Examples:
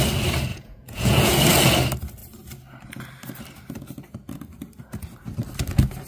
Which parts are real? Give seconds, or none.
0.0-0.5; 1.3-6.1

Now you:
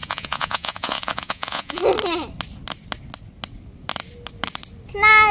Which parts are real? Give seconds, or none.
1.8-5.3

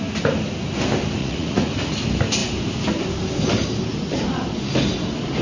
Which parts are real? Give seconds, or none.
0.0-1.2; 1.7-5.4

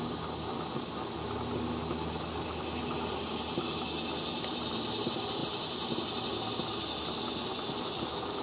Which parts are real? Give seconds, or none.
0.0-8.4

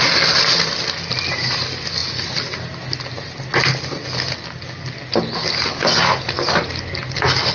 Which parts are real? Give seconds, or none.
0.0-7.5

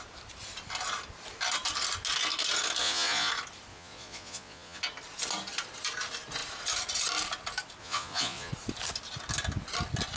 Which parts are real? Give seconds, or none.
0.0-2.8; 3.3-3.7; 4.8-7.8; 8.5-10.2

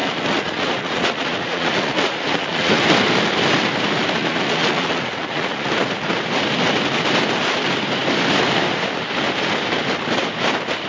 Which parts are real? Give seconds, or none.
2.8-4.2; 5.7-10.9

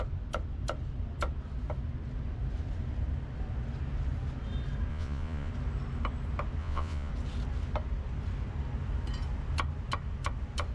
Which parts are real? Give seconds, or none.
0.0-4.9; 5.5-6.6; 7.1-10.7